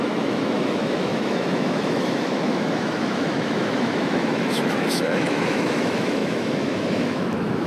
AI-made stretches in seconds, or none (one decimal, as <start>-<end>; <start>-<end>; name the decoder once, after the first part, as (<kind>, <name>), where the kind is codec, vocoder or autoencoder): 0.0-7.7 (autoencoder, DAC-VAE)

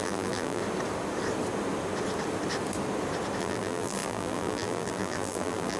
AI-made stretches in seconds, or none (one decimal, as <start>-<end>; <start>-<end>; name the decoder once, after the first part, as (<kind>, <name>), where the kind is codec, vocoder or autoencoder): 0.0-0.6 (vocoder, BigVGAN v2); 3.4-5.8

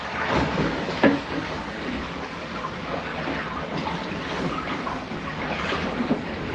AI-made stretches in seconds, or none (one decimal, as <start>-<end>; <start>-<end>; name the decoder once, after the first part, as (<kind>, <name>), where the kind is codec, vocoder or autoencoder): 0.0-3.1 (codec, DAC); 4.5-6.5

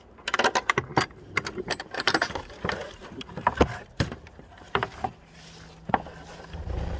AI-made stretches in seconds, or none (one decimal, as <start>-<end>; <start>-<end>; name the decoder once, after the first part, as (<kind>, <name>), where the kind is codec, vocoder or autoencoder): 0.9-5.1 (vocoder, BigVGAN v2); 6.3-7.0

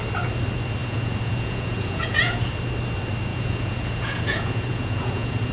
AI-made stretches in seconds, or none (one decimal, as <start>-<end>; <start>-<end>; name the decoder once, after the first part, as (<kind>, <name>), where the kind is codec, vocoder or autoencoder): 0.8-2.5 (vocoder, Vocos); 3.3-5.5

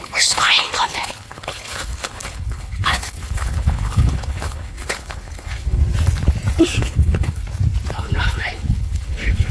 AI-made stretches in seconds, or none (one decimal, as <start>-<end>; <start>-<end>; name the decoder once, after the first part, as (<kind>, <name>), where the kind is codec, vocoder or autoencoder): 0.0-5.8 (codec, HILCodec); 6.6-7.4; 7.9-9.5